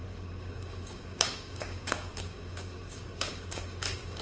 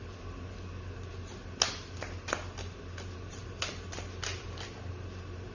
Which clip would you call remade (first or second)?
first